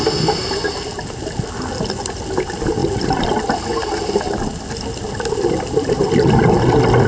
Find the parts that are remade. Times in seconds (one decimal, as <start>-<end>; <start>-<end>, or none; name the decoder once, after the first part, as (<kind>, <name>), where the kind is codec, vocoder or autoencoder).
none